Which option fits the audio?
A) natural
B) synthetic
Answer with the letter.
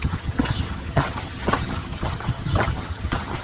B